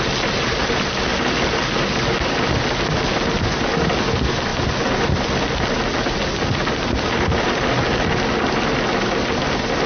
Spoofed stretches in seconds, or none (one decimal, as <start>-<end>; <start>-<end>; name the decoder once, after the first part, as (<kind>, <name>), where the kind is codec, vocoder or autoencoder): none